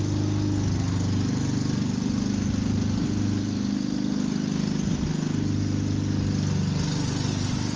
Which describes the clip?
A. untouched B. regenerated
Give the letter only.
A